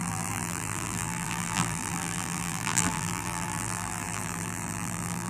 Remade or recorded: remade